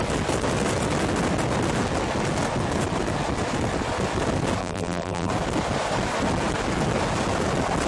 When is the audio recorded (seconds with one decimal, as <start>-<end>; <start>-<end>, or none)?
0.0-4.6; 5.3-7.9